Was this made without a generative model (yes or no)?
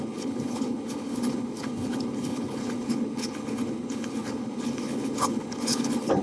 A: no